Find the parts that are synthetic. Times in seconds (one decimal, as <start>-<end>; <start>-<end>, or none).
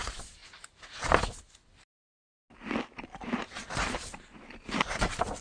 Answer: none